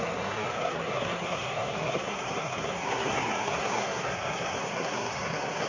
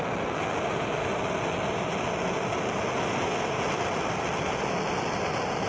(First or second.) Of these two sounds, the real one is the second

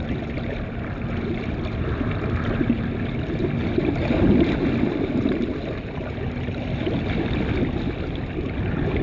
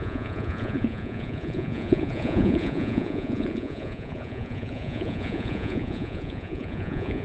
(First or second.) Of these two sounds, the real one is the first